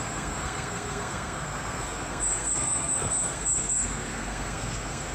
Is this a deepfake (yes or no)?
yes